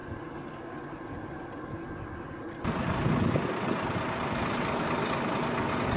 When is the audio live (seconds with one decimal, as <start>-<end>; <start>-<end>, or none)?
0.0-6.0